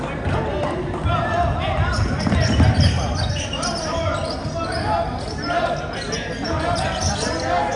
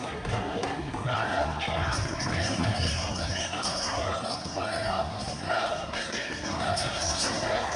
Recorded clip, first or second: first